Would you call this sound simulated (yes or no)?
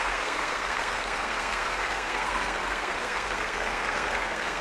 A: yes